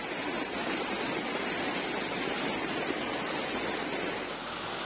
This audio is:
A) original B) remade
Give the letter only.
A